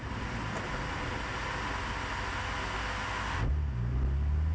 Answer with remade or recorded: recorded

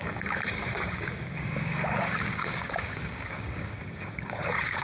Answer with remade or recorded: remade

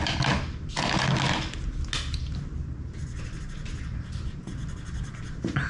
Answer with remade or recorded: recorded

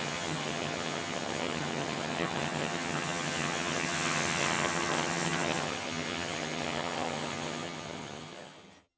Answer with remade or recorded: remade